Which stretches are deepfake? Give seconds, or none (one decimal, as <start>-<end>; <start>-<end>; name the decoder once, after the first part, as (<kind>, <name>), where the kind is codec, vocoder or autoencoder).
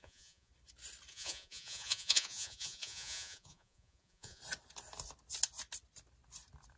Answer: 0.0-0.5 (vocoder, Vocos); 1.1-4.4